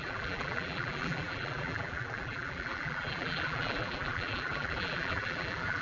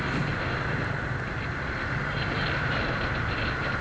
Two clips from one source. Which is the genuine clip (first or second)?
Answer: second